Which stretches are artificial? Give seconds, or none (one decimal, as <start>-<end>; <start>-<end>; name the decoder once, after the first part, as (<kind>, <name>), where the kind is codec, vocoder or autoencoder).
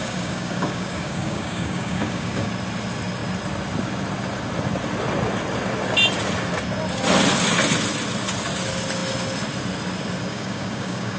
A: 0.0-2.5 (codec, DAC); 10.3-11.2